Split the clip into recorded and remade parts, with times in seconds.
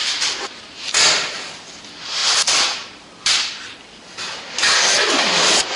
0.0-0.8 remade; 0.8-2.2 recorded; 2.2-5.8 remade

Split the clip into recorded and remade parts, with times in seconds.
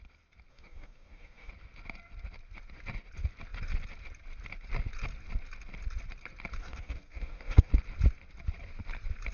0.0-0.5 recorded; 0.5-1.5 remade; 1.5-6.6 recorded; 6.6-7.7 remade; 7.7-9.3 recorded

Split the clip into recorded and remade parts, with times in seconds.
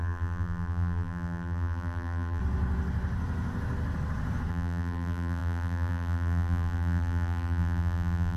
0.0-2.4 remade; 2.4-4.5 recorded; 4.5-8.4 remade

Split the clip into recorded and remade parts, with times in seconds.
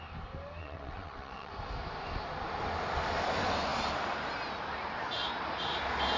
0.0-0.6 recorded; 0.6-1.5 remade; 1.5-6.2 recorded